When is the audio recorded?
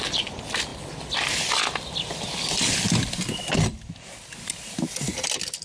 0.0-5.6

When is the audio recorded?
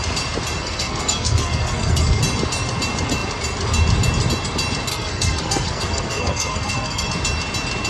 0.0-0.6; 2.2-4.9; 7.1-7.9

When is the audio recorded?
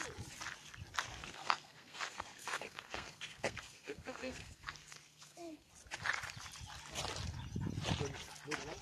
0.0-1.2; 5.7-8.8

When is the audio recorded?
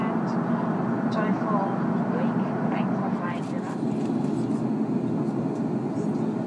0.0-6.5